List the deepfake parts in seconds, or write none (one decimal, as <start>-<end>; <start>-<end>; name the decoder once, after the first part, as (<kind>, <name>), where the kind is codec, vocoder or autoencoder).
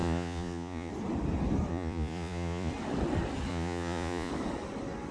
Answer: 0.0-0.9 (vocoder, Vocos); 1.7-2.7; 3.5-4.3